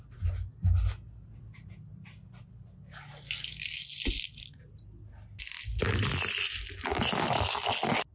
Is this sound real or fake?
real